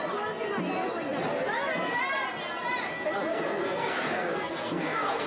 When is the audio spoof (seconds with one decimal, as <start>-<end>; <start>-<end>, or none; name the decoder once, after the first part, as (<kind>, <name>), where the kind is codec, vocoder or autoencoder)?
3.3-5.3 (codec, SNAC)